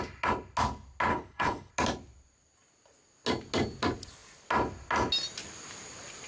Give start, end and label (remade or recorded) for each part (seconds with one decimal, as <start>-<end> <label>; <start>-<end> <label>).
0.0-1.1 recorded; 1.1-1.7 remade; 1.7-6.3 recorded